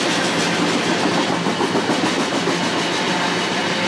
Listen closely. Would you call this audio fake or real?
real